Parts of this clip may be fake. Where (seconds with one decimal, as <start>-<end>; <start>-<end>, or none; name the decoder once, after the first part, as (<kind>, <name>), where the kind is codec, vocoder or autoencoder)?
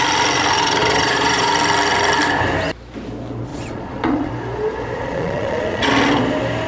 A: 0.8-1.5 (vocoder, Vocos); 3.5-4.3; 5.0-5.9